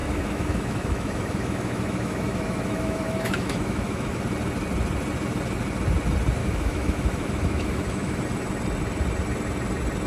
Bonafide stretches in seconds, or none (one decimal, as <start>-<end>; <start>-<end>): 4.2-6.4; 8.2-10.1